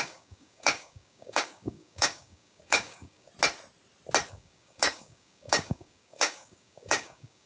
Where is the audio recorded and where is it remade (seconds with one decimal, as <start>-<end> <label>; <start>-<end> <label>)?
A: 0.0-3.3 remade; 3.3-4.3 recorded; 4.3-7.5 remade